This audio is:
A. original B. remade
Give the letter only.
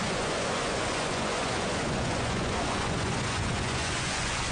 B